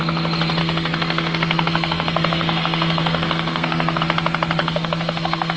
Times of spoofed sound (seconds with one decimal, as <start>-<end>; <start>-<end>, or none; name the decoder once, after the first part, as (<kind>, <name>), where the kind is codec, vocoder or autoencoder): 0.6-4.0 (codec, SNAC); 4.6-5.6